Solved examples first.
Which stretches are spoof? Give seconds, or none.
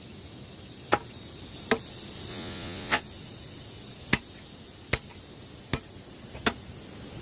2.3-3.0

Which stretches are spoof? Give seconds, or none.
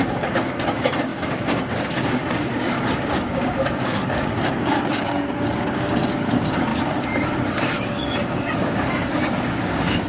0.0-10.1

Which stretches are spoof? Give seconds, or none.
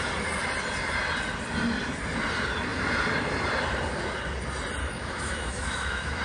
4.8-6.2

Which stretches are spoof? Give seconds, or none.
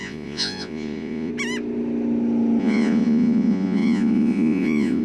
0.0-1.3; 2.6-5.0